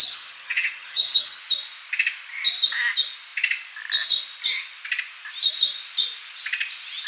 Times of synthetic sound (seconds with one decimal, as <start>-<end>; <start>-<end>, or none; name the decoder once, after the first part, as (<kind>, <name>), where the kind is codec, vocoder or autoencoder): 0.0-1.4 (vocoder, HiFi-GAN)